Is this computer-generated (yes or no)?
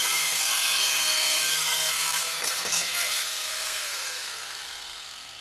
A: yes